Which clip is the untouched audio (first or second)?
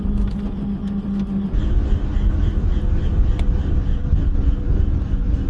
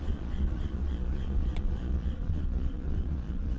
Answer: first